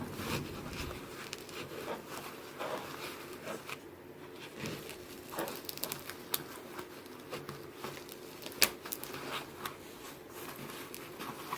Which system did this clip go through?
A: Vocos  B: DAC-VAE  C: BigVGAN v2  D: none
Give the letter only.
D